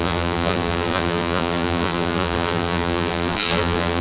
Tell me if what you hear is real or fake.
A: fake